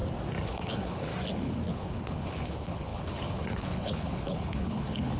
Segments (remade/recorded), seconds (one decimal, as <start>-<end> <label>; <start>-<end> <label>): 0.0-0.5 recorded; 0.5-1.1 remade; 1.1-1.7 recorded; 1.7-5.2 remade